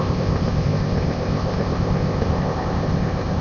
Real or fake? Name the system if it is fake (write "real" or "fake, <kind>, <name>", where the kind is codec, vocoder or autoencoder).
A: fake, codec, ZipCodec